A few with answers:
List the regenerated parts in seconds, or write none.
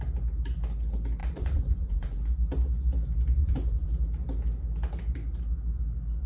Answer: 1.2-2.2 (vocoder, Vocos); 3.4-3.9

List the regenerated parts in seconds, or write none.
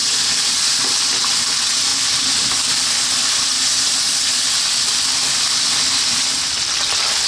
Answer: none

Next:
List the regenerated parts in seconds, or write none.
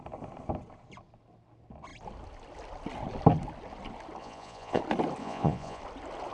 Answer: 4.2-4.8 (vocoder, Vocos); 5.2-5.8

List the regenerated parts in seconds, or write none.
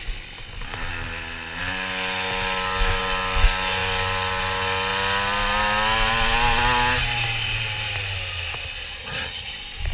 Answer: 9.0-9.5 (vocoder, HiFi-GAN)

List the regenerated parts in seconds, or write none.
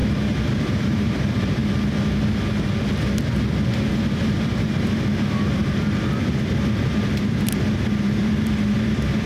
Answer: 0.6-1.6 (vocoder, BigVGAN v2); 3.9-9.3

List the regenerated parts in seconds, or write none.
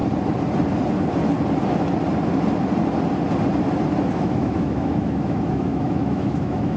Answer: 4.1-6.8 (autoencoder, DAC-VAE)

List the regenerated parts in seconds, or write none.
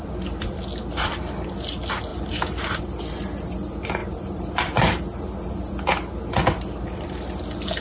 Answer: 2.1-2.8 (vocoder, BigVGAN v2); 4.0-5.0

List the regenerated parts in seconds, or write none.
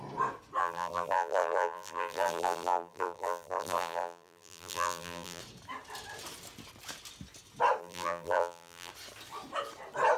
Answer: 0.6-5.4 (vocoder, BigVGAN v2); 7.8-8.9